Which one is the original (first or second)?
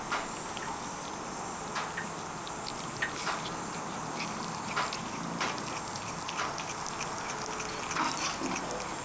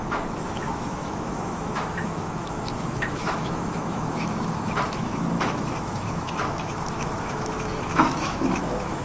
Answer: first